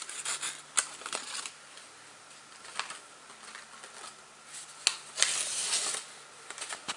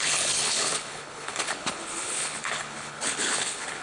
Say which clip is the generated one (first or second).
second